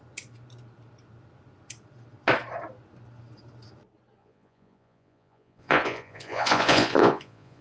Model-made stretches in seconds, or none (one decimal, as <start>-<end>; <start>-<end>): 4.2-7.6